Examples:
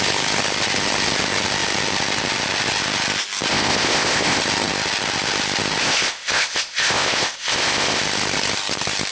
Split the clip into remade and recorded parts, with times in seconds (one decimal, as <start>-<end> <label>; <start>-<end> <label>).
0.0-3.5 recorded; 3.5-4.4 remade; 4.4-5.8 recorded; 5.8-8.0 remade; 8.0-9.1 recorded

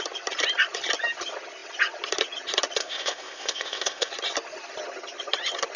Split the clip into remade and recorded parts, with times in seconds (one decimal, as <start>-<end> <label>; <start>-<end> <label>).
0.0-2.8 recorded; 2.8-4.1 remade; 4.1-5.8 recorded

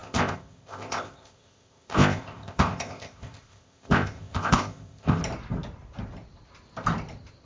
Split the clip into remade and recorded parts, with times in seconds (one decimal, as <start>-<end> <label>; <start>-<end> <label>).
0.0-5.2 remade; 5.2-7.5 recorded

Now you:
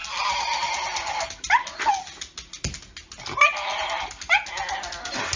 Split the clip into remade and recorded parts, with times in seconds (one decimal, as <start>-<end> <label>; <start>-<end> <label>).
0.0-5.4 recorded

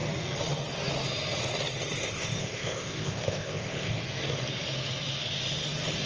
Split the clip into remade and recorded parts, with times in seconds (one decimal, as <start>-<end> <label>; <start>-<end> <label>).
0.0-2.0 recorded; 2.0-4.0 remade; 4.0-6.1 recorded

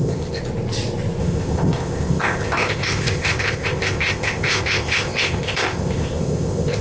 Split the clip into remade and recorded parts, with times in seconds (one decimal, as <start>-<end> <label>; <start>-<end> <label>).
0.0-0.4 remade; 0.4-1.2 recorded; 1.2-6.8 remade